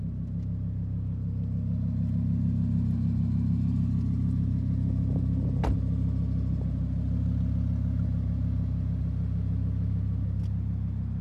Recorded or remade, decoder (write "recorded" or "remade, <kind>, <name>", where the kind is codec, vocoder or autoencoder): recorded